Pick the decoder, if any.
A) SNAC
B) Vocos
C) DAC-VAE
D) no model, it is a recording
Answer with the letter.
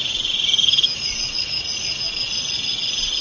B